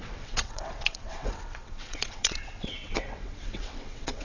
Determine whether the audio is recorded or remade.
remade